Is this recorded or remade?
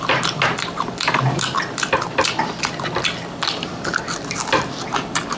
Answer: recorded